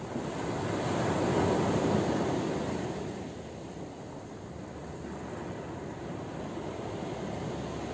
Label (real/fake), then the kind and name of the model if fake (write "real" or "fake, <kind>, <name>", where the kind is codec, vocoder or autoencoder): real